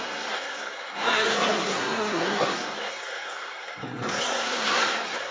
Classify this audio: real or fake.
fake